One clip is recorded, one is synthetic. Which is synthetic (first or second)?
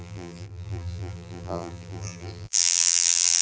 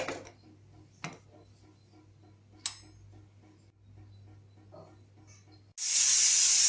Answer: first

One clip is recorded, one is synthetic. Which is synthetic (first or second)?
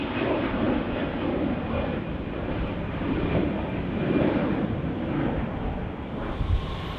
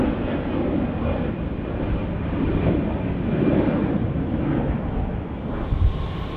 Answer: first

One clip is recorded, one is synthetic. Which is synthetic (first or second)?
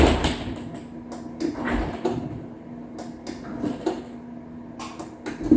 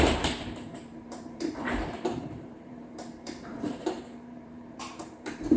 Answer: second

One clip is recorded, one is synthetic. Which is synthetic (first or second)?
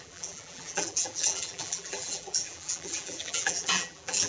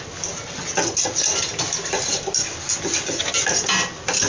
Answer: first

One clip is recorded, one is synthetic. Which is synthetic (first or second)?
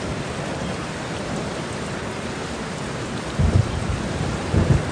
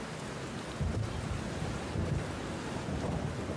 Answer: first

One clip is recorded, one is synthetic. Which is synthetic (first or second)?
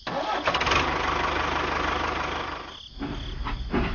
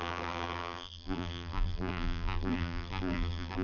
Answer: second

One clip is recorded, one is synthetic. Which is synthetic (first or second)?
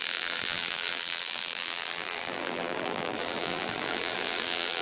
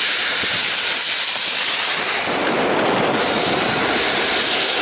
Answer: first